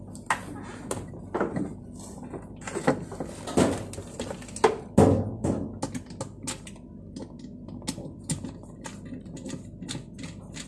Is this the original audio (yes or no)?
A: yes